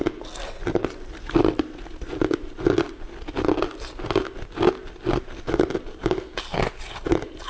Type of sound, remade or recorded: recorded